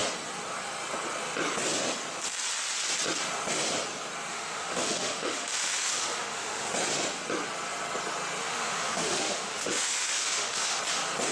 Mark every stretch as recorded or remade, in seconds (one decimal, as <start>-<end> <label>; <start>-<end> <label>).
0.0-4.3 recorded; 4.3-6.7 remade; 6.7-8.4 recorded; 8.4-10.8 remade; 10.8-11.3 recorded